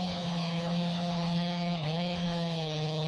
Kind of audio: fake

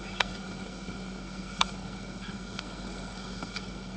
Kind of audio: fake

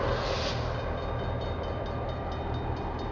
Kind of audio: real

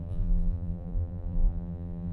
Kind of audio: fake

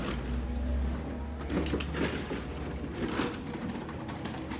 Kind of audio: real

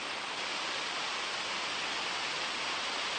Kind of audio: real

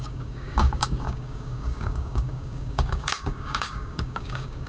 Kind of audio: fake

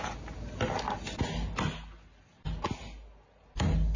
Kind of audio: real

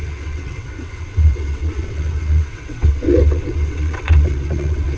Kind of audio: fake